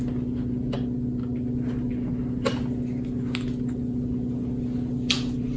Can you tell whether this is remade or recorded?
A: recorded